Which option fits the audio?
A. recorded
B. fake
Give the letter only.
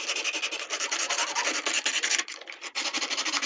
A